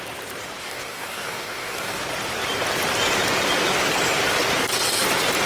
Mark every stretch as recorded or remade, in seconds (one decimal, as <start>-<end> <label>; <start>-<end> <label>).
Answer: 0.0-0.6 recorded; 0.6-2.0 remade; 2.0-5.5 recorded